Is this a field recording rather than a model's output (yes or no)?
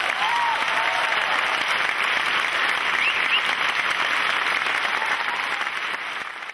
yes